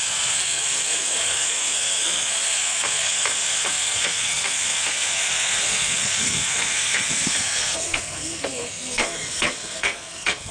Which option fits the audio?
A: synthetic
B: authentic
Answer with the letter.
A